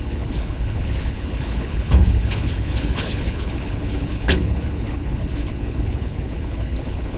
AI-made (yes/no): yes